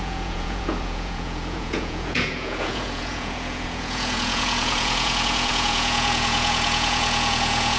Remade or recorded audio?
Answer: remade